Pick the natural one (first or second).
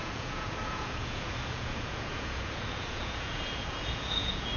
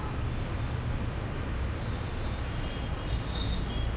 second